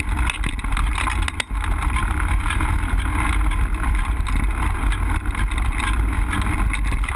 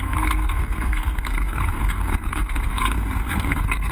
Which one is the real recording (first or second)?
first